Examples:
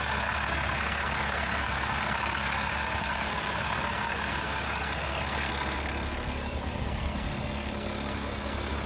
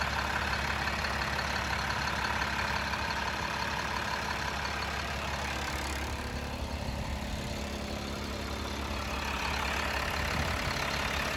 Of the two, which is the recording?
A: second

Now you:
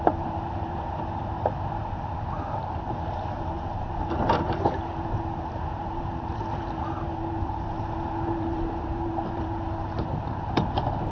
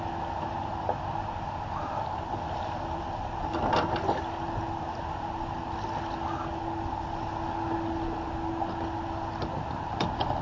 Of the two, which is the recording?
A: second